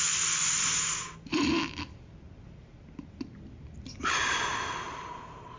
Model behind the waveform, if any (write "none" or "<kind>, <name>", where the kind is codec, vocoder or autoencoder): none